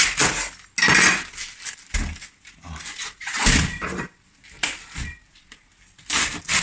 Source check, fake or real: real